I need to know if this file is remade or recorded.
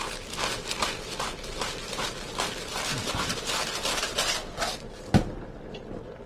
recorded